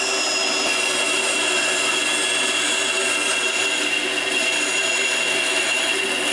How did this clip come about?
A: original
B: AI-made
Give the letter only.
A